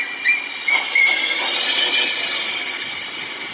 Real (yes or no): yes